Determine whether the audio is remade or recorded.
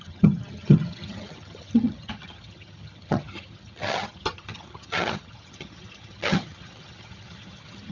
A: remade